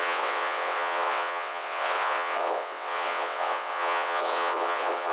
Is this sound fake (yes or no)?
yes